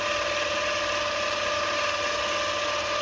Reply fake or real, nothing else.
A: real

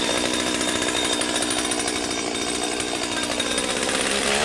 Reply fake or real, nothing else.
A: real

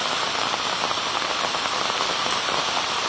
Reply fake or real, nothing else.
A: real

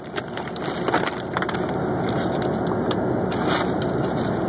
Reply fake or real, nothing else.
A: real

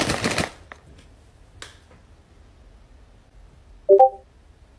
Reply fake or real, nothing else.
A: real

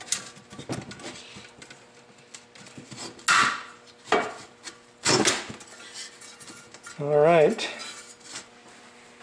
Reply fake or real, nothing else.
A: real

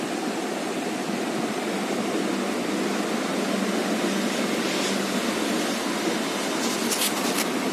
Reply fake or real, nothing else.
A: real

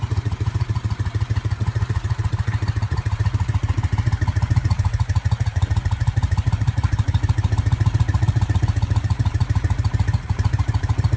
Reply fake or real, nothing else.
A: fake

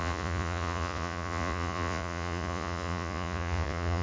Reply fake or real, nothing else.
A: fake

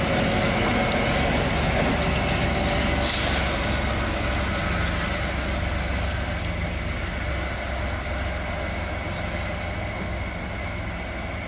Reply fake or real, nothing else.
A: real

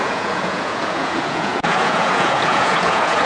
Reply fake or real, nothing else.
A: fake